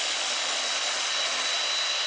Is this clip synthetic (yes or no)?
no